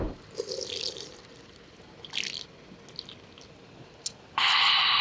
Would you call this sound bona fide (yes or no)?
yes